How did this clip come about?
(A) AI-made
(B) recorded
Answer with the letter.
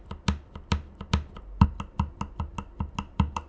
B